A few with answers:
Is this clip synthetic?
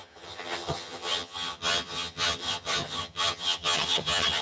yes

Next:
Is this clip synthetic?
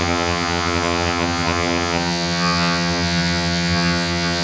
yes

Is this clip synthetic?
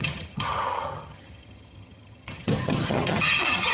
yes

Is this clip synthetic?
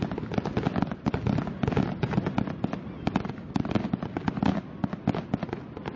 no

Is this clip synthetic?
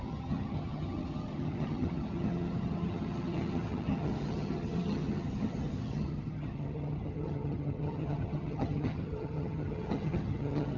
yes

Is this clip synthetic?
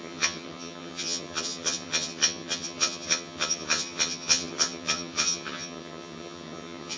yes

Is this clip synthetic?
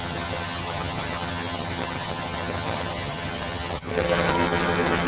yes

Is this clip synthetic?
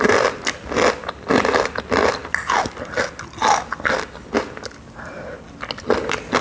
no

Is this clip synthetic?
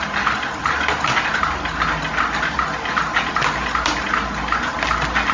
no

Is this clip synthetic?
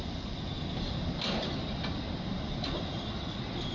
no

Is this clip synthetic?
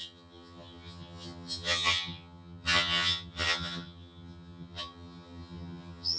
yes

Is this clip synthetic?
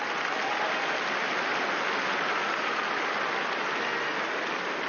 no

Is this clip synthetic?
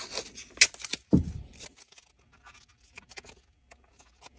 no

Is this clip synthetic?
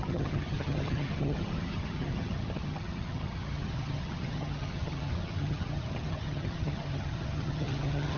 yes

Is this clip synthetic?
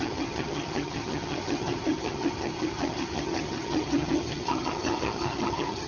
yes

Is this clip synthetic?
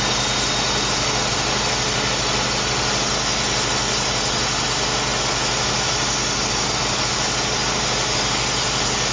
no